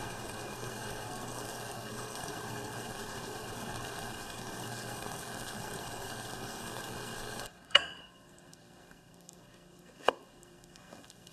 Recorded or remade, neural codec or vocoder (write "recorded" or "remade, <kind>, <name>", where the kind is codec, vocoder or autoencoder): remade, codec, SNAC